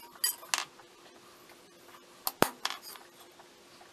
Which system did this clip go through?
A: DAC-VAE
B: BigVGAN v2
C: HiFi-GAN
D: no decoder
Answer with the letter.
D